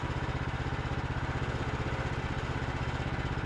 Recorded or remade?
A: recorded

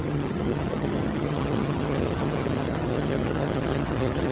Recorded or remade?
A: remade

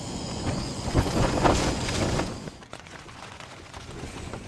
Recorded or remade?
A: remade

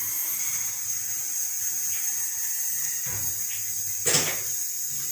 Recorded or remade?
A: remade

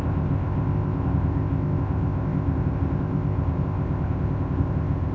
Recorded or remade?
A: remade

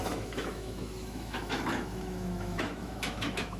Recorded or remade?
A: remade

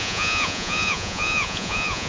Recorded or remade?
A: remade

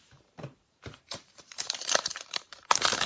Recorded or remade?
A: remade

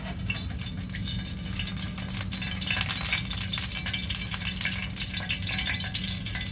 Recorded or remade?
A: recorded